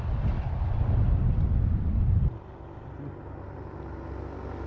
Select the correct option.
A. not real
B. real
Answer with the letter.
B